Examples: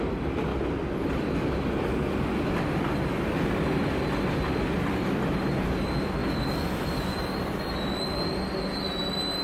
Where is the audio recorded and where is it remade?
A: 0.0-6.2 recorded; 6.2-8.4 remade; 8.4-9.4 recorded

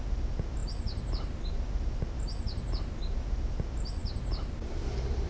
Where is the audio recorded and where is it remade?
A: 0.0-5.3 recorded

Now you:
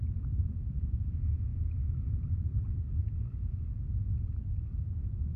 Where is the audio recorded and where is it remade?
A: 0.0-1.5 remade; 1.5-4.7 recorded; 4.7-5.4 remade

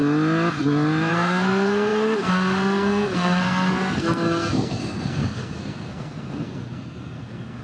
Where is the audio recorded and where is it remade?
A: 0.0-1.1 recorded; 1.1-7.6 remade

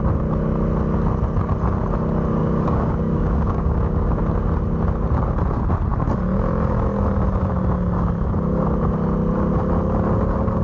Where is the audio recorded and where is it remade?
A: 0.0-2.4 recorded; 2.4-4.2 remade; 4.2-10.6 recorded